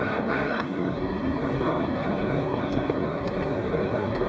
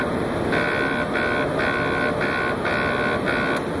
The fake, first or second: first